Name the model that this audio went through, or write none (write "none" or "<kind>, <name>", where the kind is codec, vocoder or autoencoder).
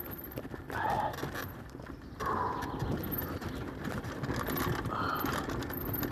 none